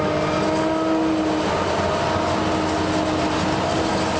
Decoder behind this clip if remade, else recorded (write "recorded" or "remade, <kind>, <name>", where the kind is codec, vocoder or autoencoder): recorded